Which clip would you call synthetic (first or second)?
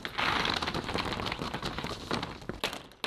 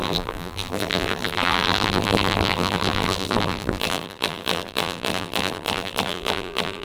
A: second